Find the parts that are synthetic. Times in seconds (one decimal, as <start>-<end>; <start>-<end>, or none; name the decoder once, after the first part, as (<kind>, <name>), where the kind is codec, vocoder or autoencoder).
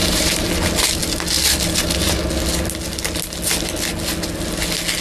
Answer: 0.0-0.5 (vocoder, BigVGAN v2)